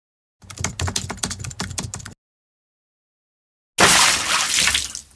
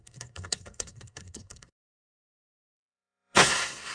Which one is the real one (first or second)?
first